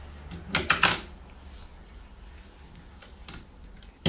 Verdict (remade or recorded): recorded